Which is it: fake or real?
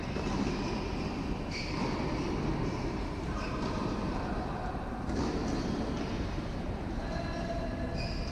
real